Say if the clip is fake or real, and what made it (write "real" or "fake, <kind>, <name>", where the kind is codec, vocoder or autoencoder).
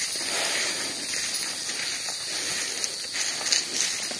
real